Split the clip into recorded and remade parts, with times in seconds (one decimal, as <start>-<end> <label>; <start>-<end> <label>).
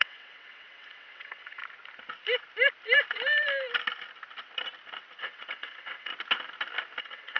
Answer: 0.0-1.6 remade; 1.6-5.2 recorded; 5.2-6.1 remade; 6.1-7.0 recorded; 7.0-7.4 remade